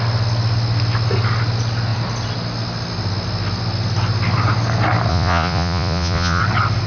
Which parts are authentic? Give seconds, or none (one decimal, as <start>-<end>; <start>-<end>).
0.0-5.1; 6.4-6.9